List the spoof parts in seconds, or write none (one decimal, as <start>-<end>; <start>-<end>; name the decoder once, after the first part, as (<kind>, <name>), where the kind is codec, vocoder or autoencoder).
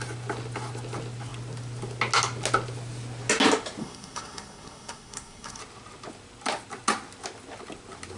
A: 3.8-5.6 (codec, SNAC)